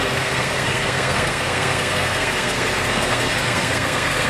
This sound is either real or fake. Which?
fake